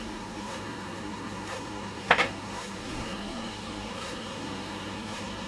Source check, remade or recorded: remade